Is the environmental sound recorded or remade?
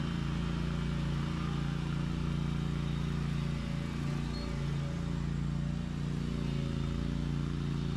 recorded